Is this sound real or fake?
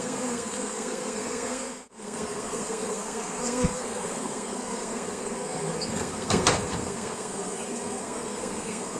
fake